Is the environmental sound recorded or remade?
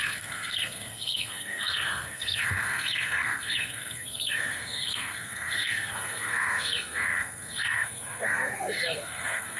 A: remade